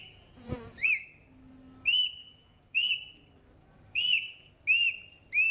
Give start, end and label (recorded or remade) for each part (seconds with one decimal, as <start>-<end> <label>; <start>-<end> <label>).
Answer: 0.0-0.9 remade; 0.9-2.2 recorded; 2.2-2.9 remade; 2.9-3.6 recorded; 3.6-4.5 remade; 4.5-5.5 recorded